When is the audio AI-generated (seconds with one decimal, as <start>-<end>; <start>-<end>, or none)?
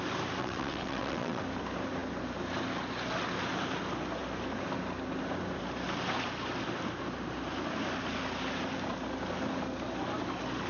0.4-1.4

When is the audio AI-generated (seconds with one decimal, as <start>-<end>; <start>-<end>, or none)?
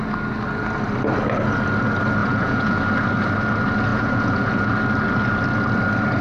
2.2-2.8; 3.9-4.7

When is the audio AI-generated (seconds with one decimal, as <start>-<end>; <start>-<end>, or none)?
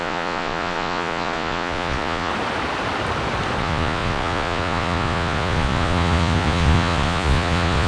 0.0-2.3; 3.6-7.9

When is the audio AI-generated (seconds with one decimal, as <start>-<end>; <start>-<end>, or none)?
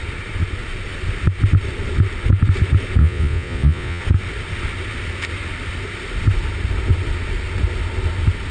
3.0-4.0